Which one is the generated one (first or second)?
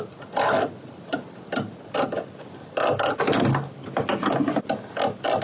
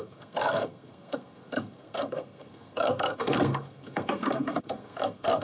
second